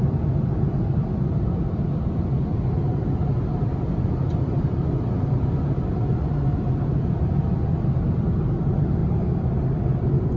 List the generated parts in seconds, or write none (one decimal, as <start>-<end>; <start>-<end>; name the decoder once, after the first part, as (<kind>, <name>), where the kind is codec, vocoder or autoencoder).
none